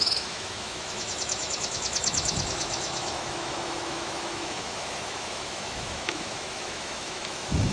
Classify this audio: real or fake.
fake